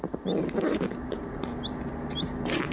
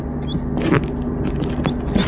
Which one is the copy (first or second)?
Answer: first